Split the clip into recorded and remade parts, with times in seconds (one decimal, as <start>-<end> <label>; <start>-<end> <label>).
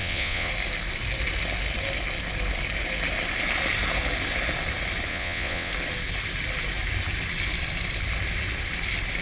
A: 0.0-0.5 remade; 0.5-5.1 recorded; 5.1-5.7 remade; 5.7-9.2 recorded